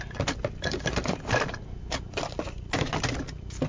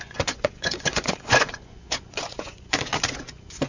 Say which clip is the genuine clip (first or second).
first